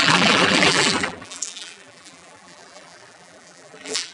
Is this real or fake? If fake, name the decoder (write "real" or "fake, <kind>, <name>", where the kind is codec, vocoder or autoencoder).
fake, vocoder, BigVGAN v2